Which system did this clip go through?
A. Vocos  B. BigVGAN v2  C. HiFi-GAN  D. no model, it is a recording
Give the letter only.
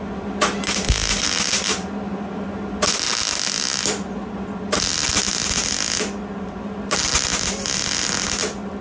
D